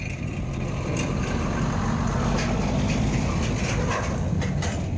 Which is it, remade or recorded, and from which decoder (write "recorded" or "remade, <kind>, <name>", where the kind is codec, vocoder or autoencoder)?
recorded